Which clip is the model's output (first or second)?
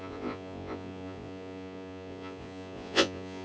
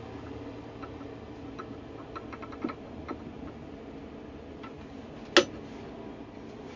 first